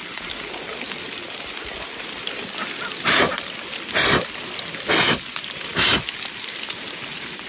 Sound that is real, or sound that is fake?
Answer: real